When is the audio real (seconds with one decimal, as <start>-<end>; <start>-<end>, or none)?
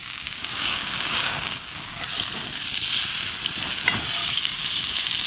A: 2.1-4.2